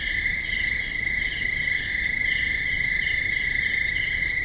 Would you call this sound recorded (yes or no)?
yes